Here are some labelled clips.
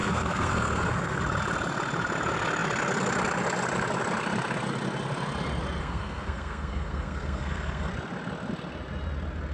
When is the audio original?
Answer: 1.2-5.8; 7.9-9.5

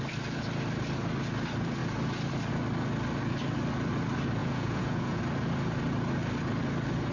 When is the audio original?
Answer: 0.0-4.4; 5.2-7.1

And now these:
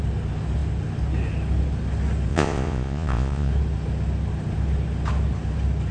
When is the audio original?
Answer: 0.0-2.3; 3.5-5.9

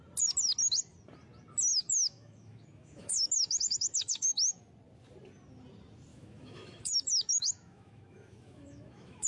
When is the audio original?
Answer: 0.0-1.7; 4.6-6.1